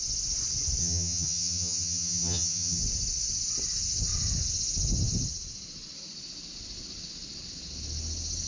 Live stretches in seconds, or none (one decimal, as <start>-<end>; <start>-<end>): 0.0-0.8; 2.8-8.5